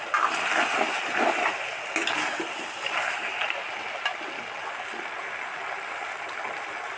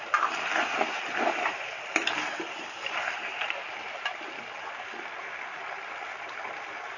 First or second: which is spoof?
second